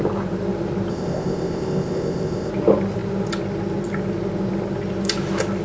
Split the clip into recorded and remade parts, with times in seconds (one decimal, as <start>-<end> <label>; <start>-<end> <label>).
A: 0.0-0.9 recorded; 0.9-2.5 remade; 2.5-5.6 recorded